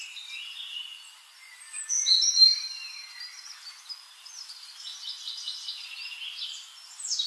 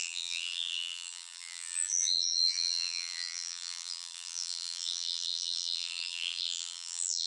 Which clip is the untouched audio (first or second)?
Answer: first